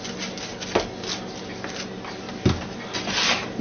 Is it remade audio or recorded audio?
recorded